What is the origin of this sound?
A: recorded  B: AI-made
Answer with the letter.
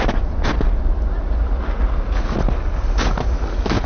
A